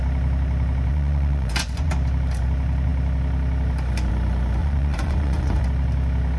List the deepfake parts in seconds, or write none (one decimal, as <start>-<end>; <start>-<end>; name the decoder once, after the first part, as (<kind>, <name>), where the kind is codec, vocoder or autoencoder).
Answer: 0.9-1.9 (vocoder, Vocos); 4.6-5.6